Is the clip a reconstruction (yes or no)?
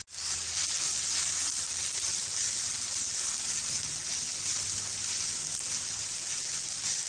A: no